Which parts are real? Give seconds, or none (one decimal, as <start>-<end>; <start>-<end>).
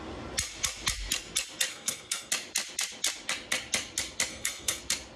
0.0-1.7; 2.3-4.3; 4.8-5.2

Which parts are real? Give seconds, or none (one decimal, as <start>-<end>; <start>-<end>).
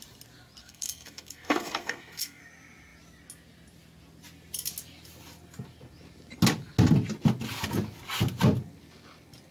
0.0-0.6; 2.4-9.5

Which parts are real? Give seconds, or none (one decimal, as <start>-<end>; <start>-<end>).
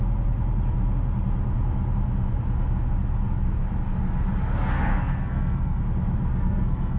0.0-4.6; 5.8-6.3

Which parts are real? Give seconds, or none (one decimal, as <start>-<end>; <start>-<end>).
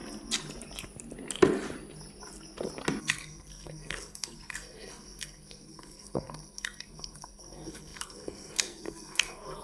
0.0-3.0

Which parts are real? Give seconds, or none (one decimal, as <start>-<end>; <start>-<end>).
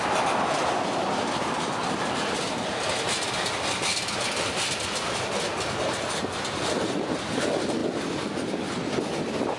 0.0-9.6